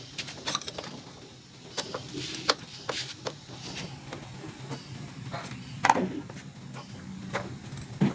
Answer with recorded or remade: recorded